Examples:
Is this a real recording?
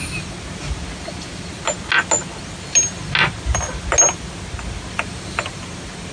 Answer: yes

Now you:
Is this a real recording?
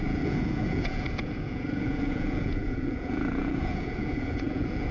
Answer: no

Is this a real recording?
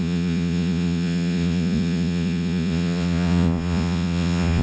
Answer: no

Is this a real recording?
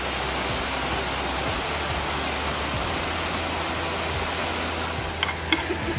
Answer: yes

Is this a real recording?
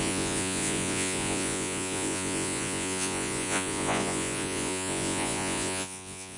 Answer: no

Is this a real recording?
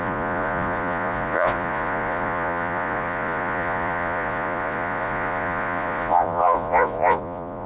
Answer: no